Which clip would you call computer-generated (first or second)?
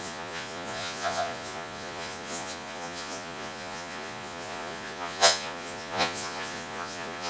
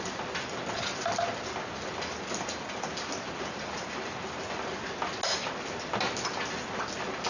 first